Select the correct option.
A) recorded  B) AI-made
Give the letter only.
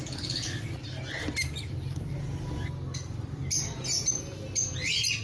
A